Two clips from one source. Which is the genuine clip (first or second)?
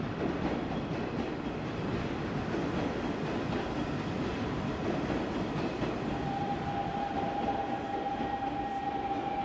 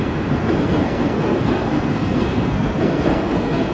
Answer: first